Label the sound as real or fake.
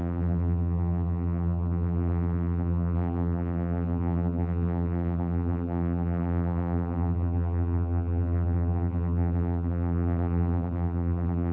fake